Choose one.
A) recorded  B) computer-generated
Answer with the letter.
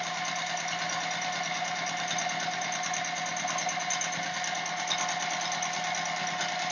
A